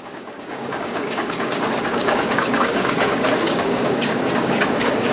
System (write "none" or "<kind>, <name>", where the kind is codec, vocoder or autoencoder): codec, DAC